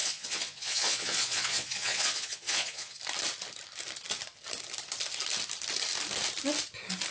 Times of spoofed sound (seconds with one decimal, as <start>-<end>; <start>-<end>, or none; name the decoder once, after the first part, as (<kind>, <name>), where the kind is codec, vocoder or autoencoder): 0.0-3.0 (vocoder, Vocos)